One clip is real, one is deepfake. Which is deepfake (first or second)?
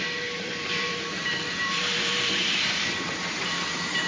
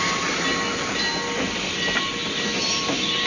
first